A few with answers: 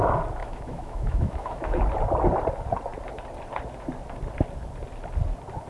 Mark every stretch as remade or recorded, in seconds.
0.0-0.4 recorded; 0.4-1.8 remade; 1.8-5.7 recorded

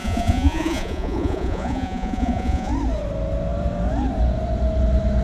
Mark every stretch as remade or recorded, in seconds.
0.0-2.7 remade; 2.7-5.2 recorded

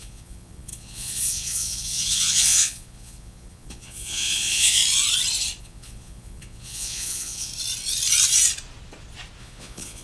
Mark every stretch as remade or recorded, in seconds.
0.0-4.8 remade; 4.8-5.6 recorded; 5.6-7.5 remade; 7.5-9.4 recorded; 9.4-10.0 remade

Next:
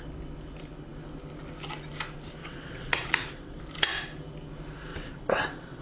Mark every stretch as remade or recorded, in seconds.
0.0-2.4 recorded; 2.4-3.6 remade; 3.6-4.9 recorded; 4.9-5.8 remade

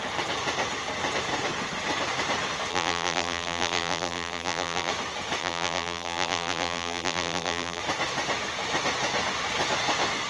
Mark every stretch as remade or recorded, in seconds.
0.0-2.7 recorded; 2.7-4.9 remade; 4.9-5.4 recorded; 5.4-7.8 remade; 7.8-10.3 recorded

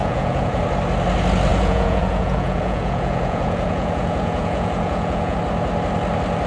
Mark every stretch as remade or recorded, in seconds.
0.0-0.6 remade; 0.6-1.5 recorded; 1.5-5.4 remade; 5.4-6.5 recorded